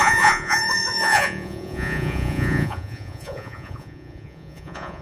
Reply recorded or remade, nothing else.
remade